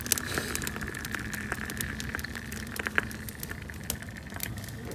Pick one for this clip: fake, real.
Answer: real